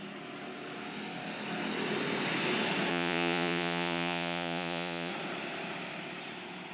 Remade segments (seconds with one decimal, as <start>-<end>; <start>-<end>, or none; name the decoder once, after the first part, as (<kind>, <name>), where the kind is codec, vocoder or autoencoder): 2.9-5.1 (vocoder, Vocos)